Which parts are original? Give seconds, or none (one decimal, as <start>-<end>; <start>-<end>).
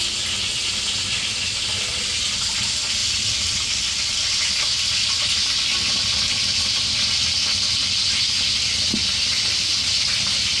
0.0-10.6